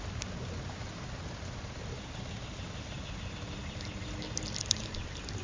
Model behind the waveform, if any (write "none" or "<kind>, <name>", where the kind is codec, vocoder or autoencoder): none